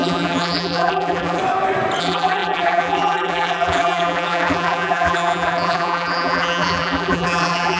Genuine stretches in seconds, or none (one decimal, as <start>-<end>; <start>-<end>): 1.4-2.0